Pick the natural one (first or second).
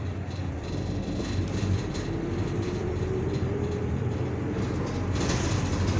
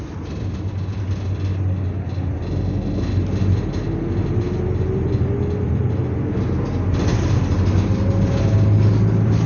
second